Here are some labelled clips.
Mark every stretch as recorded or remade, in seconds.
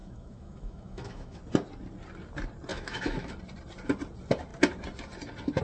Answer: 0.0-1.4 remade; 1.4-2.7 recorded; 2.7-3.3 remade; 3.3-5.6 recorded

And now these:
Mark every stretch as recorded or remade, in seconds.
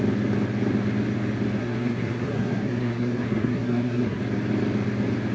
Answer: 0.0-1.6 recorded; 1.6-4.2 remade; 4.2-5.3 recorded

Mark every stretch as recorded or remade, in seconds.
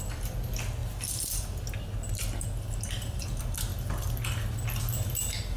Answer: 0.0-5.6 recorded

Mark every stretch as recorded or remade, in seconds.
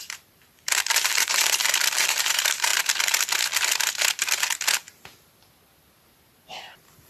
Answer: 0.0-1.6 remade; 1.6-2.2 recorded; 2.2-2.7 remade; 2.7-7.1 recorded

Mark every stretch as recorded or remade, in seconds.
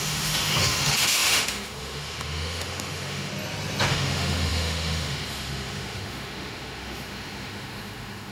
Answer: 0.0-3.3 remade; 3.3-3.9 recorded; 3.9-8.3 remade